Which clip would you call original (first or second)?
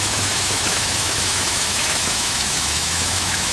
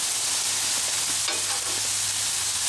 second